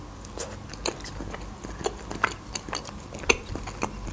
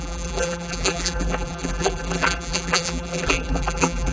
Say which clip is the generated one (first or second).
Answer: second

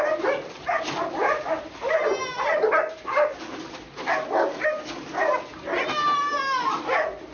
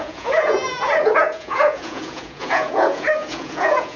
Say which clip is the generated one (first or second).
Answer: second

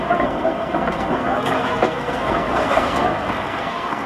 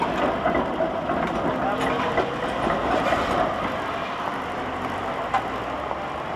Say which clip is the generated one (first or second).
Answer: first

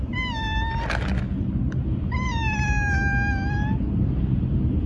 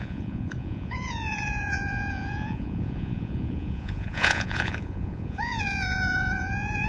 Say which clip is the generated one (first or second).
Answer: second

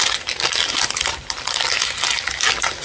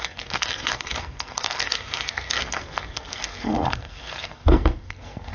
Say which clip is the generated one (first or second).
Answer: second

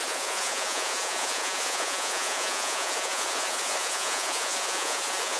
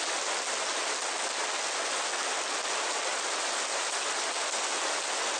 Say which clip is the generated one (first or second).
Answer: first